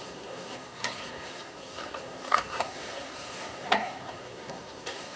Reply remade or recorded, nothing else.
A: remade